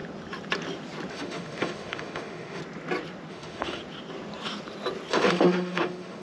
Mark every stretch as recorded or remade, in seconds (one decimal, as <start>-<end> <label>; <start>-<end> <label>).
0.0-1.1 recorded; 1.1-2.6 remade; 2.6-3.3 recorded; 3.3-3.8 remade; 3.8-5.1 recorded; 5.1-6.2 remade